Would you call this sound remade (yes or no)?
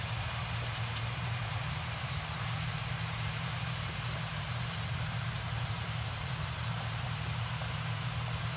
yes